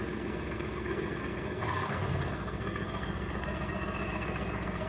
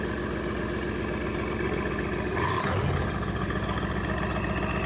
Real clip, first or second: second